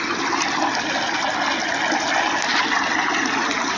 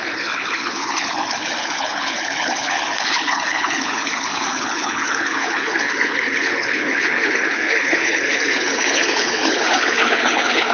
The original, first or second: first